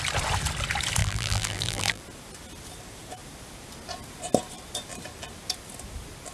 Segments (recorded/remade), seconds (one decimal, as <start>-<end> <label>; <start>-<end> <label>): 0.0-1.0 recorded; 1.0-2.0 remade; 2.0-6.3 recorded